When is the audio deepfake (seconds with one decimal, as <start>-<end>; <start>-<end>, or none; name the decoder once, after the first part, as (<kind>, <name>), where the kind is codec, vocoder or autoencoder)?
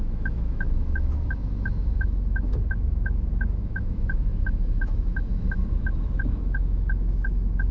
0.0-7.7 (autoencoder, DAC-VAE)